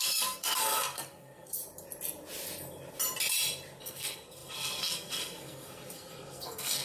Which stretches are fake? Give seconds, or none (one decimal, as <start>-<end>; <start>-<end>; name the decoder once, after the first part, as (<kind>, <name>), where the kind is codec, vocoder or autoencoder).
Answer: 0.0-1.6 (codec, SNAC); 3.8-6.8